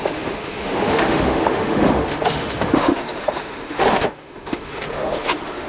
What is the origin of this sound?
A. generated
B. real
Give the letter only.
A